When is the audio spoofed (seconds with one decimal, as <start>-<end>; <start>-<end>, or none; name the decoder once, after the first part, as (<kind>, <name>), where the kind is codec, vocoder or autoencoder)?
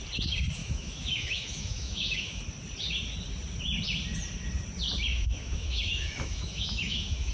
0.6-2.4 (autoencoder, DAC-VAE); 5.1-7.3